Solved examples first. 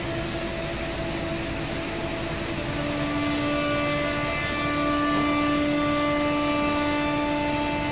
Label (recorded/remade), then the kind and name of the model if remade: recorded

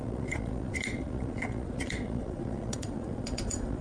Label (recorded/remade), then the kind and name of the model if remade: remade, vocoder, Vocos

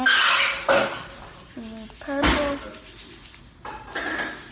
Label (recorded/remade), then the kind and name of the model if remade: recorded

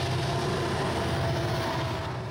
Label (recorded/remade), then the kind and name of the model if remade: recorded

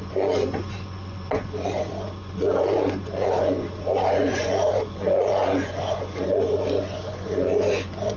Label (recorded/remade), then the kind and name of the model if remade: remade, vocoder, Vocos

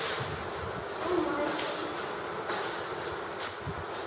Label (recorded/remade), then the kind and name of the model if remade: recorded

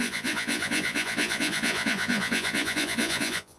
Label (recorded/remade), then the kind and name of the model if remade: remade, vocoder, Vocos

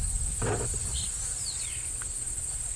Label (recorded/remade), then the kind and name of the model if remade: recorded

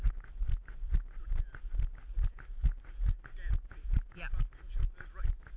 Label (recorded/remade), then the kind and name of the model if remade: recorded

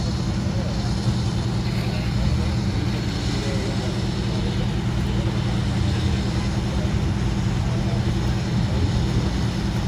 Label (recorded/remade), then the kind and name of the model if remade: recorded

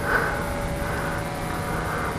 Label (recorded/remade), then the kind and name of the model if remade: recorded